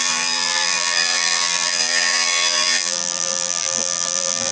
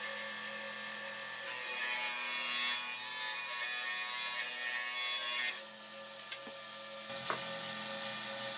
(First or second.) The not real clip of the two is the first